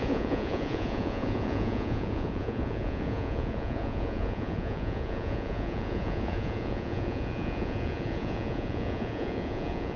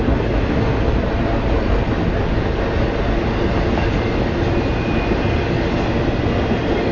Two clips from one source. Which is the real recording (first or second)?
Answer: second